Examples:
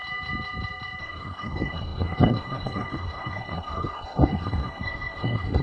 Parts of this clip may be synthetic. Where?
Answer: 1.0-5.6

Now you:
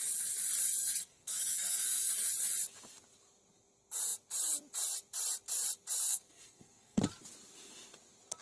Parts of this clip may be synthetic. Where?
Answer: 0.8-2.1; 6.1-7.0

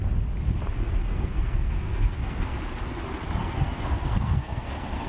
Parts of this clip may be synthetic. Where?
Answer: 1.0-2.6; 3.4-5.1